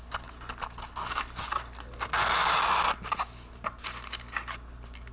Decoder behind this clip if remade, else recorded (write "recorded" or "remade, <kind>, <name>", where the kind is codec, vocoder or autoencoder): recorded